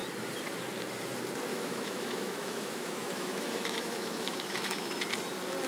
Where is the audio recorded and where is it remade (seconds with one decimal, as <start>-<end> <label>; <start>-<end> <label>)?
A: 0.0-1.5 recorded; 1.5-4.9 remade; 4.9-5.7 recorded